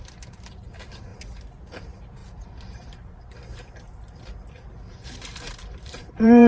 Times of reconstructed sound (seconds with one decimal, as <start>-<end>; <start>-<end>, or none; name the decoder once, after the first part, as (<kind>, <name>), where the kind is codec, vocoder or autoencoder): 0.0-1.1 (vocoder, BigVGAN v2); 1.7-6.5